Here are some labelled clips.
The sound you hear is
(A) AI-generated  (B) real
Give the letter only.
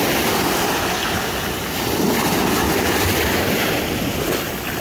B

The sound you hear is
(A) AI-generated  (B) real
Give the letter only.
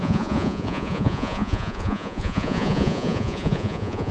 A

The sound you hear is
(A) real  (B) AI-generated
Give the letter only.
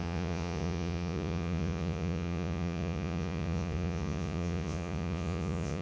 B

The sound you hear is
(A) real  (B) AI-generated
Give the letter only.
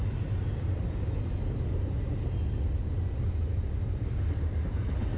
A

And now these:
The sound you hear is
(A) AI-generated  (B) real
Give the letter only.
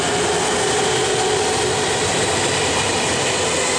B